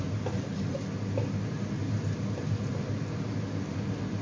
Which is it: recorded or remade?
recorded